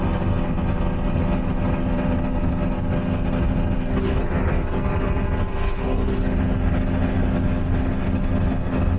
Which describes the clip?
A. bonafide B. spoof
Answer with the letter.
A